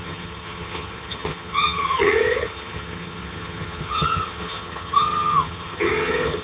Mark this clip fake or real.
fake